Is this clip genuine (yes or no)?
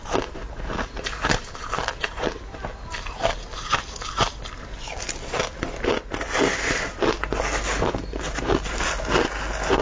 yes